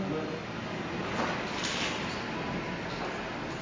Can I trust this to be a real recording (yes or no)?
yes